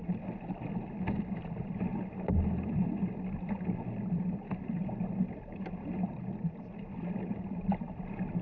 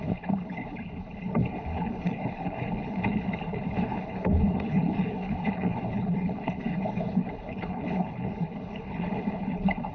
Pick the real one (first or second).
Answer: first